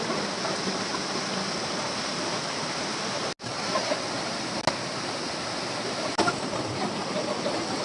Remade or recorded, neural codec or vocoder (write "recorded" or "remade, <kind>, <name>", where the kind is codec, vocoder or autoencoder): recorded